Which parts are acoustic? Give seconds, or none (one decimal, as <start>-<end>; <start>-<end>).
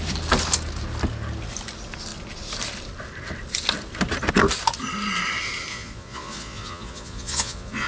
0.0-5.7